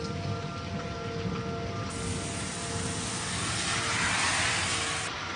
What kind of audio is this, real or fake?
real